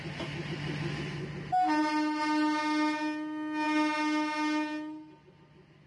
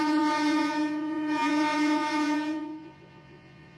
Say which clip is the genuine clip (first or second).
first